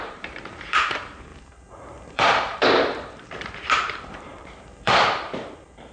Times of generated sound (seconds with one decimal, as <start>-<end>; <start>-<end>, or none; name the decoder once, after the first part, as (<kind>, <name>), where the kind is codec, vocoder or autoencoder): 0.0-5.9 (vocoder, BigVGAN v2)